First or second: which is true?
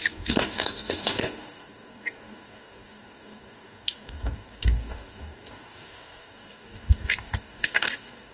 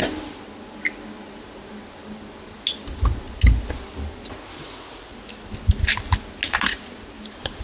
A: second